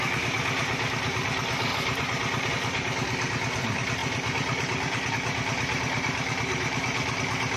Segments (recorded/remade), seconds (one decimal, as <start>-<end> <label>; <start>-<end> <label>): 0.0-7.6 remade